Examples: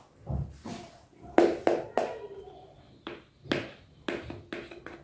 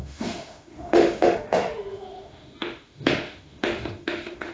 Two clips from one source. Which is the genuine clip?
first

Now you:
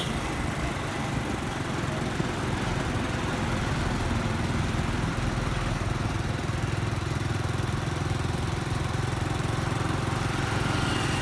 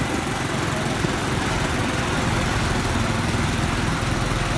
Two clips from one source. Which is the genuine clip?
second